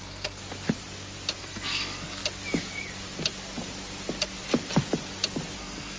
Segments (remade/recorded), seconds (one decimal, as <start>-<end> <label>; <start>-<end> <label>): 0.0-0.4 remade; 0.4-1.4 recorded; 1.4-2.2 remade; 2.2-5.6 recorded; 5.6-6.0 remade